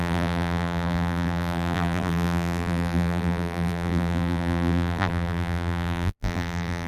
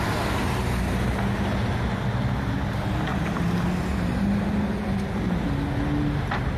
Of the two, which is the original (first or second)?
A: second